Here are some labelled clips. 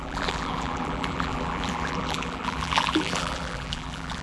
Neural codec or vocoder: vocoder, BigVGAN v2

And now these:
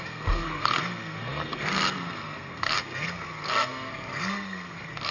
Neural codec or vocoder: codec, SNAC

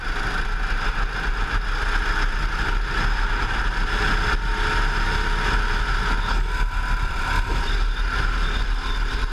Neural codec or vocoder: none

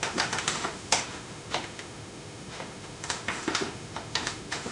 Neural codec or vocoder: autoencoder, DAC-VAE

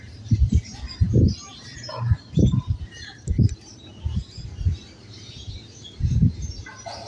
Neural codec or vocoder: vocoder, BigVGAN v2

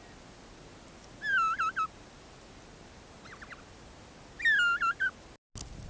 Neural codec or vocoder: none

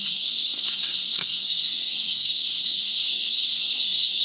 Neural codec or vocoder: codec, SNAC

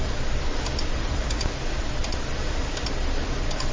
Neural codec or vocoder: none